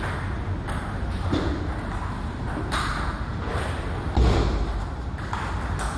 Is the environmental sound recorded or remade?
recorded